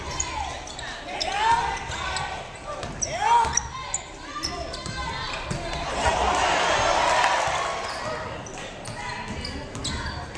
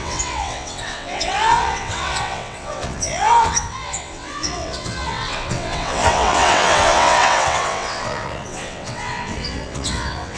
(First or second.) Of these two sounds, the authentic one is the first